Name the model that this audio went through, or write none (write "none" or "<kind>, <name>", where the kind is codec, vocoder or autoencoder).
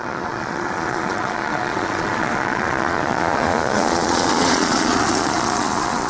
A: vocoder, Vocos